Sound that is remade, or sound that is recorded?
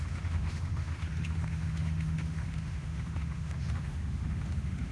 remade